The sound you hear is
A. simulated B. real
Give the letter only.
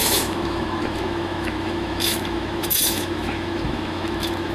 A